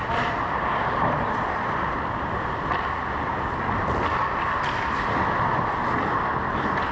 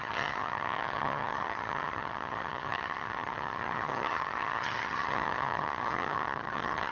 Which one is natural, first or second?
first